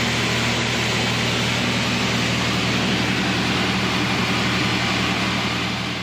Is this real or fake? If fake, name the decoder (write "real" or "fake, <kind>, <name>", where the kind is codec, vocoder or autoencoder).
real